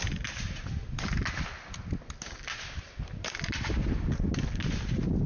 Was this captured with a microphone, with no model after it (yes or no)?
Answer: yes